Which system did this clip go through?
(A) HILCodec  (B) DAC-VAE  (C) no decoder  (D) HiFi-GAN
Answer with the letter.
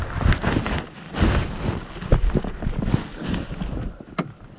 C